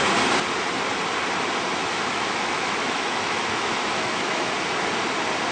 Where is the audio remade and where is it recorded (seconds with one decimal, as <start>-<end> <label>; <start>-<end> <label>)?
0.0-1.8 recorded; 1.8-4.5 remade; 4.5-5.5 recorded